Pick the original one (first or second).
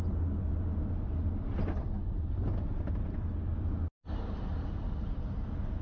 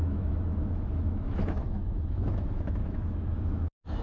first